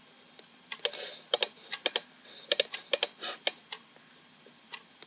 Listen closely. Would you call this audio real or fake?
real